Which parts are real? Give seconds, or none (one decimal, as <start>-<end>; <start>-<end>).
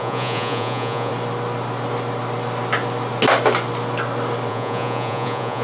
1.1-4.5